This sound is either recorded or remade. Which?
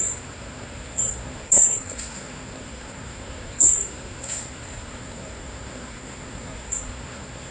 remade